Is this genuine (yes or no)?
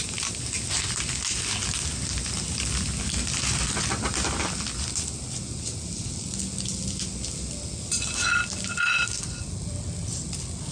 yes